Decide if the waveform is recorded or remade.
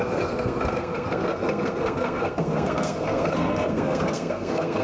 remade